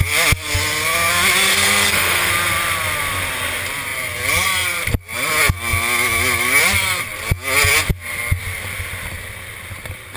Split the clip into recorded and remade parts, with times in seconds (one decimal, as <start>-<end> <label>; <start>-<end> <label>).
0.0-1.5 recorded; 1.5-2.3 remade; 2.3-10.2 recorded